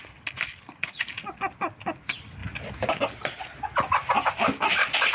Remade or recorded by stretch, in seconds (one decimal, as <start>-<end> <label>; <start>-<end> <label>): 0.0-5.1 recorded